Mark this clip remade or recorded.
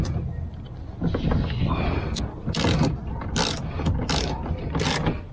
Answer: recorded